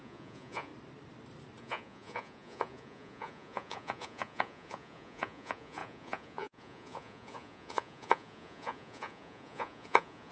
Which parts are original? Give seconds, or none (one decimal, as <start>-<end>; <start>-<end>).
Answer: 0.7-1.6